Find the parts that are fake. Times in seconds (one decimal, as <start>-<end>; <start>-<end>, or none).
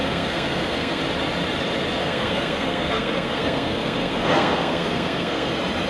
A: 0.0-1.0; 2.0-5.5